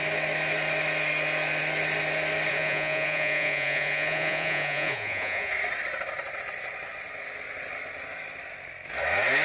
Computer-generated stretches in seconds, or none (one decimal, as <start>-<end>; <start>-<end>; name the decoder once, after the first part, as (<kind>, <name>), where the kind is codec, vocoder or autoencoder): 2.5-5.5 (vocoder, Vocos)